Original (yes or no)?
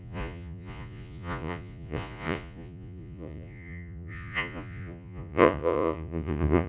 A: no